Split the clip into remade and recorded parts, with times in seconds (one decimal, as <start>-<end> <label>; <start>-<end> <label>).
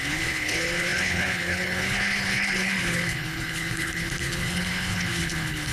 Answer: 0.0-5.7 remade